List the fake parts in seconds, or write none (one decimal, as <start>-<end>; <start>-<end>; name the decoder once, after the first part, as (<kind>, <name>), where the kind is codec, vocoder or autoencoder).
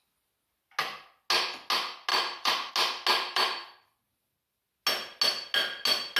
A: 2.1-2.7 (vocoder, BigVGAN v2); 3.1-3.8